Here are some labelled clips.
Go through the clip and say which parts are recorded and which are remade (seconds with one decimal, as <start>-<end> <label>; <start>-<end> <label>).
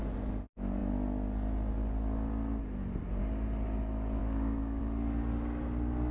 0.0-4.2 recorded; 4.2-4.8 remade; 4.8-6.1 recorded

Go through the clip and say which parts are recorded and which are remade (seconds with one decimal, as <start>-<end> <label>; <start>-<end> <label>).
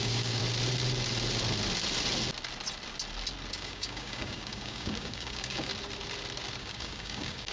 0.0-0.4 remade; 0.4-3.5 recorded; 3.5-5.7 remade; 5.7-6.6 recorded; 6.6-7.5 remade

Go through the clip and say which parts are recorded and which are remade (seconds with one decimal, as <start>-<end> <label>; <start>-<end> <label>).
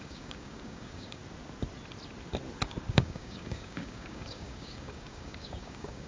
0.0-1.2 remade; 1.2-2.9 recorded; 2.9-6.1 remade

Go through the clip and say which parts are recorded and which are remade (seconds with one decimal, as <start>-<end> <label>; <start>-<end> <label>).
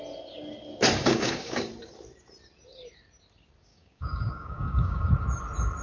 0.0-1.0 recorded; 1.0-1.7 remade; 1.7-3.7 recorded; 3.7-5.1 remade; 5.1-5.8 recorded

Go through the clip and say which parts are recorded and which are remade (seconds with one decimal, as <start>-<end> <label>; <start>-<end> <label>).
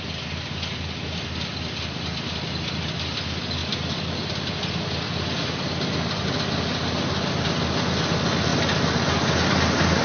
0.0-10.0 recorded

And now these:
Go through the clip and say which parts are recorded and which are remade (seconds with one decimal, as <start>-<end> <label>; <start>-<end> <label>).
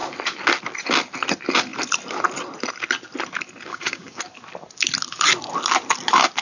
0.0-3.7 recorded; 3.7-4.2 remade; 4.2-6.4 recorded